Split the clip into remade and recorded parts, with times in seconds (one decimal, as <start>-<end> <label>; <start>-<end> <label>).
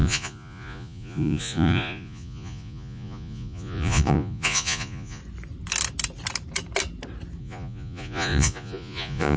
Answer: 0.0-5.2 remade; 5.2-7.4 recorded; 7.4-9.4 remade